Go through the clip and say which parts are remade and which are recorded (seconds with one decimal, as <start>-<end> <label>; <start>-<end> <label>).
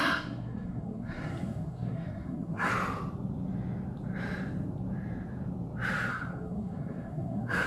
0.0-2.7 remade; 2.7-6.1 recorded; 6.1-7.7 remade